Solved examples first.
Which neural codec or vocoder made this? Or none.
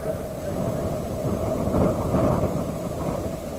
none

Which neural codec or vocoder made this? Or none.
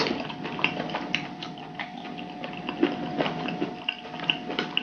none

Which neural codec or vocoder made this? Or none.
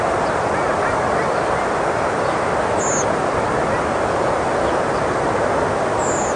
none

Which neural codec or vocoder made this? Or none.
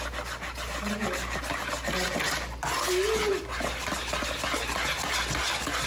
none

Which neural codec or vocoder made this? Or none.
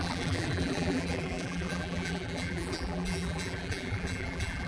vocoder, BigVGAN v2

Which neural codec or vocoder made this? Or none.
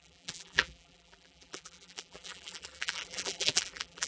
vocoder, BigVGAN v2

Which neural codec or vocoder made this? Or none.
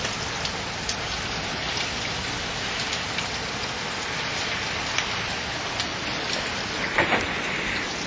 none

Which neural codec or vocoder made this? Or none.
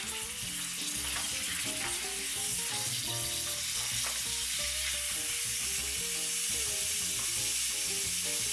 none